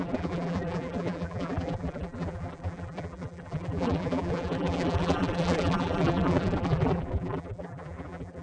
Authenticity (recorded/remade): remade